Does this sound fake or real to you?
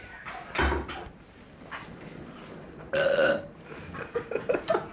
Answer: real